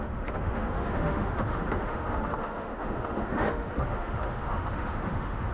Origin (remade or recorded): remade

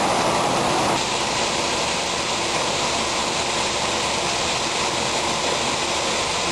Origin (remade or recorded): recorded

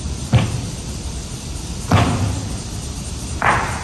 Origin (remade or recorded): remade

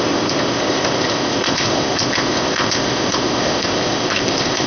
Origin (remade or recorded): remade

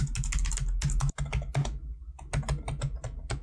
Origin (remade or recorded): recorded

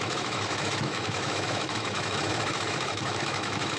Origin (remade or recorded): remade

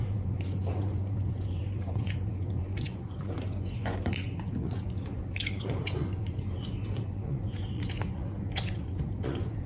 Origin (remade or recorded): remade